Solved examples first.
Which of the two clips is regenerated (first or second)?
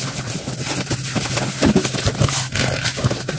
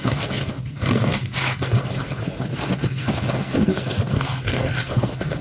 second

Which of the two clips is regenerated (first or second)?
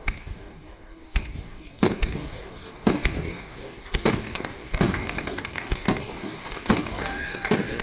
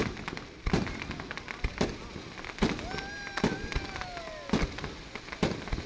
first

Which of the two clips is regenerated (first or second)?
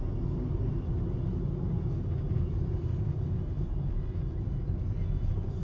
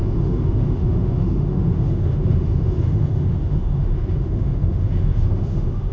second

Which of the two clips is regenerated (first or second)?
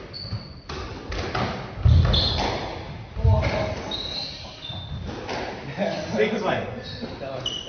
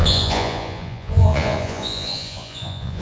second